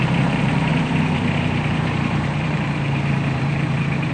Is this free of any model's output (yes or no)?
no